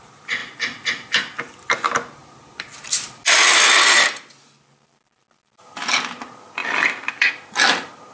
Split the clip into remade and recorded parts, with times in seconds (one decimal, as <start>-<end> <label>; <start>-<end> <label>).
0.0-6.6 recorded; 6.6-7.3 remade; 7.3-8.1 recorded